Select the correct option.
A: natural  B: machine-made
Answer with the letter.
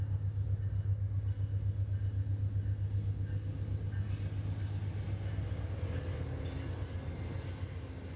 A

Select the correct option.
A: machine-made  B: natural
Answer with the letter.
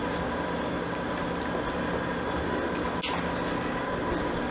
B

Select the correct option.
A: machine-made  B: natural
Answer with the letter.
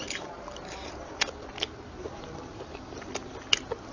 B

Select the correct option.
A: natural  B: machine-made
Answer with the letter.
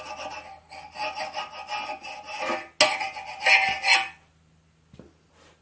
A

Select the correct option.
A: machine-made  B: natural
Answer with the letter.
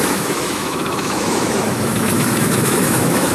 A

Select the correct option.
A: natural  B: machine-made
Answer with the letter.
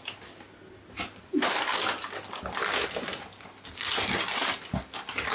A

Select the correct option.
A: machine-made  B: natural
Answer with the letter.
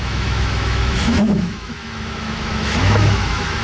A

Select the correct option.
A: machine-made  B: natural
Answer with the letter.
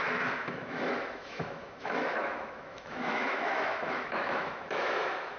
A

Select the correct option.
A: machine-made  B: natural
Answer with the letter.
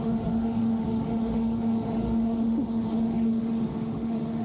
A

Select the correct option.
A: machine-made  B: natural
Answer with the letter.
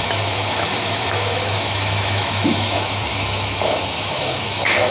A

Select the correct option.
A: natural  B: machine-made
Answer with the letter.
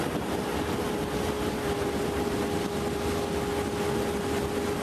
A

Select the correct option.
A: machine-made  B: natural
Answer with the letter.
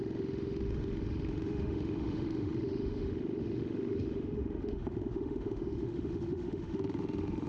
A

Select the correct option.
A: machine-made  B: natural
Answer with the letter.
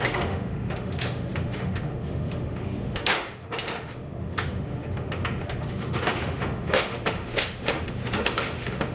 A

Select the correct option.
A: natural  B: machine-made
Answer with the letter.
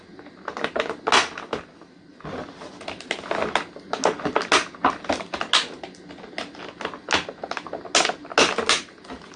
A